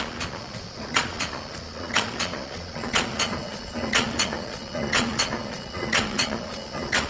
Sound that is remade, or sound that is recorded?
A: remade